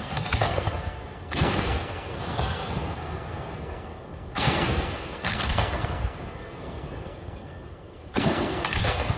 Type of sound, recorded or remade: remade